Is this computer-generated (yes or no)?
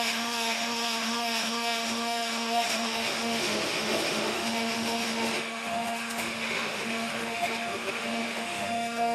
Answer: yes